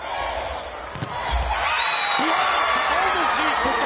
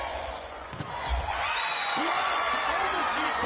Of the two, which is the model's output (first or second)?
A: second